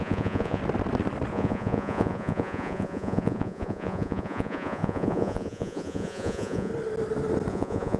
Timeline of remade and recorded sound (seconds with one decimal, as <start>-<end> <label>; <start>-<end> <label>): 0.0-0.6 remade; 0.6-1.3 recorded; 1.3-6.7 remade; 6.7-7.5 recorded; 7.5-8.0 remade